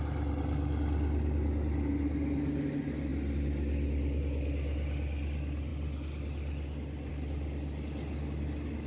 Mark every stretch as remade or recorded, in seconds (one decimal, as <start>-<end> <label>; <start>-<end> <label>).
0.0-8.9 recorded